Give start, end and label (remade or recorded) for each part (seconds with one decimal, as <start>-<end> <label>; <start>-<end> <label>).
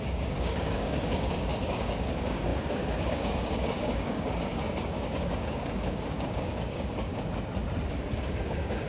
0.0-7.1 remade; 7.1-7.9 recorded; 7.9-8.9 remade